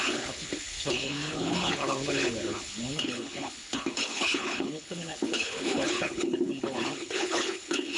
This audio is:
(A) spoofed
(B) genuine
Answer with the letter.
A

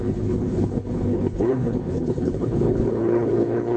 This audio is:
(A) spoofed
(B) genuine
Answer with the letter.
A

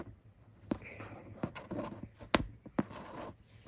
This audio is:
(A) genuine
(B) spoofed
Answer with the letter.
A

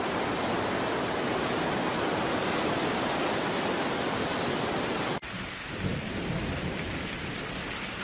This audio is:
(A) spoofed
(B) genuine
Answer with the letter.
B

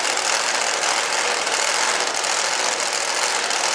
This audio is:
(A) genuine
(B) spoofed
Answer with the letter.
A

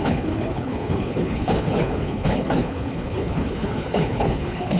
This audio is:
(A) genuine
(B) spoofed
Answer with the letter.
B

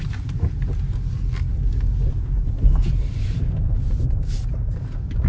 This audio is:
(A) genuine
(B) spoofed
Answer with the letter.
A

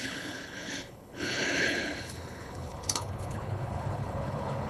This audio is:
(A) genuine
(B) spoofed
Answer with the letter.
B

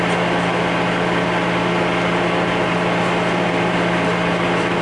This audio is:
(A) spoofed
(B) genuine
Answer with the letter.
B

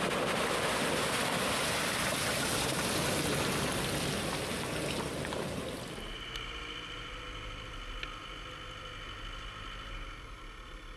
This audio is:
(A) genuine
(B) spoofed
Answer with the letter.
A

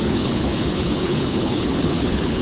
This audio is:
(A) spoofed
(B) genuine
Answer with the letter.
A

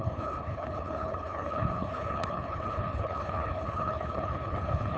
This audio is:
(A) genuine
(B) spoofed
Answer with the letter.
B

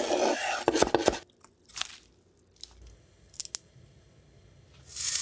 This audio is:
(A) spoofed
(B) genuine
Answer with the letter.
B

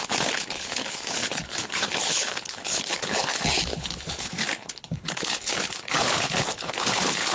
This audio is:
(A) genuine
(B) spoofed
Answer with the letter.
B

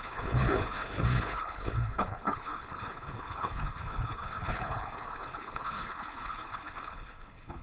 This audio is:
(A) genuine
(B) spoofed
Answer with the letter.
B